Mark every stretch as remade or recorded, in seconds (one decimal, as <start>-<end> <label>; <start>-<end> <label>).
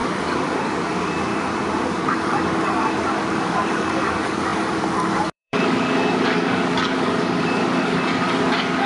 0.0-1.3 remade; 1.3-1.8 recorded; 1.8-8.9 remade